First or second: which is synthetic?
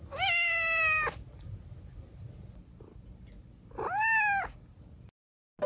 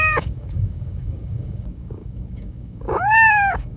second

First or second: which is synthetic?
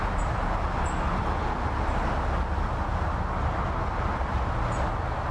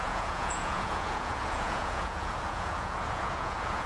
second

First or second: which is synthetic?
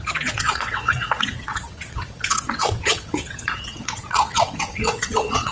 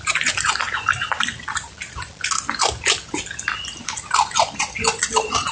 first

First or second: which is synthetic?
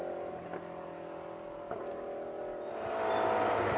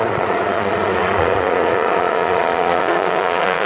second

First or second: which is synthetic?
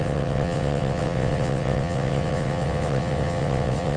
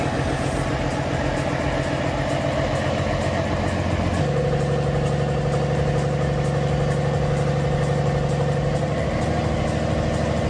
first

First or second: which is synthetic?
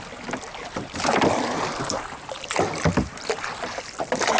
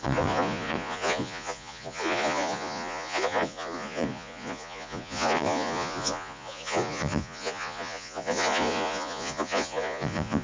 second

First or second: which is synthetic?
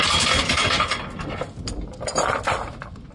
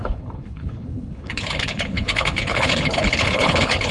second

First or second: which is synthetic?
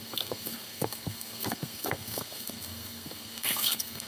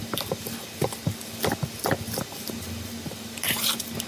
first